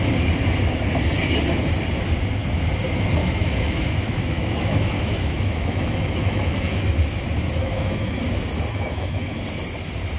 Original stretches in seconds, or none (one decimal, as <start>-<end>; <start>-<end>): 0.0-3.2; 6.8-7.6; 8.2-8.7; 9.4-10.2